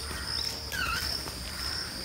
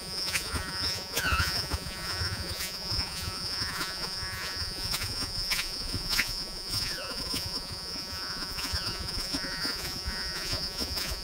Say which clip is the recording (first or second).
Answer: first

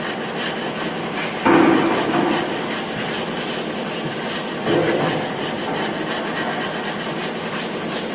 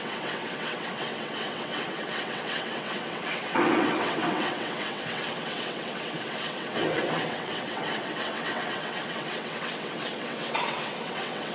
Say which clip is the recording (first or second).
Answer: first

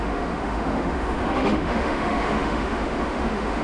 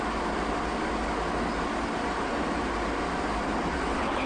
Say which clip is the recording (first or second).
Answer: second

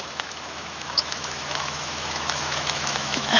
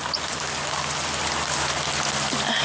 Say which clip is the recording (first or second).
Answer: second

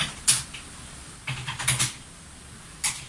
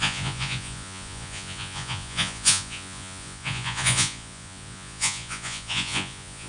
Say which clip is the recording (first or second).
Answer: first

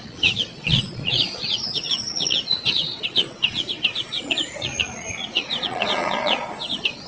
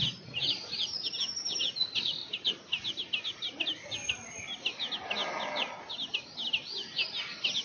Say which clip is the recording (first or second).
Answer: second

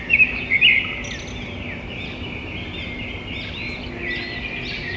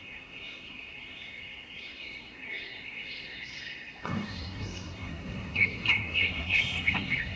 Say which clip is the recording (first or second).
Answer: first